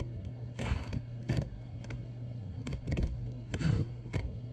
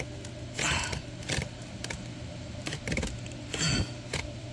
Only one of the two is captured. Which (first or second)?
second